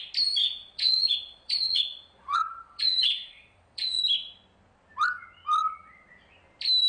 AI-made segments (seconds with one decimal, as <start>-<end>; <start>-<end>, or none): 0.4-4.0; 5.6-6.1